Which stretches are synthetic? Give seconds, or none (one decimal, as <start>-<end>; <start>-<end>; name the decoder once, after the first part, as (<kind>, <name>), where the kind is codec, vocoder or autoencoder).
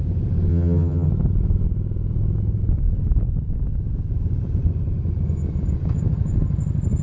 0.5-1.1 (vocoder, HiFi-GAN)